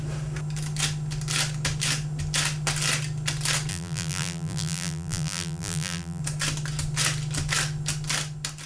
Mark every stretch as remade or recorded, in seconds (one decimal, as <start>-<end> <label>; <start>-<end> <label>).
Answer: 0.0-3.7 recorded; 3.7-6.2 remade; 6.2-8.7 recorded